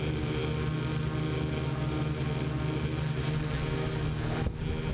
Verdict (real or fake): real